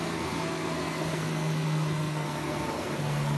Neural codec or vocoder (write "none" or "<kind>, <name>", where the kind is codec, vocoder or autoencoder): codec, SNAC